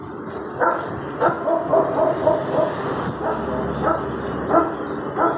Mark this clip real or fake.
real